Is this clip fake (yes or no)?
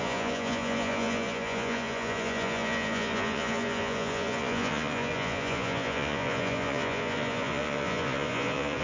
yes